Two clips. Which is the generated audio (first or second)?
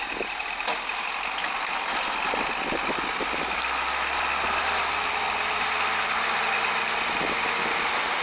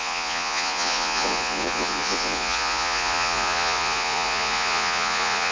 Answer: second